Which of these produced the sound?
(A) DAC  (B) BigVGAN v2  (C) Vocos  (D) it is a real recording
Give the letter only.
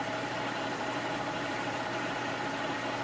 B